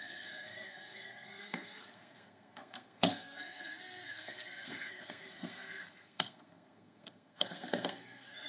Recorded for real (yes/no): no